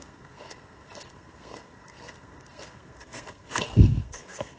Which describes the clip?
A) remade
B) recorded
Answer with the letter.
A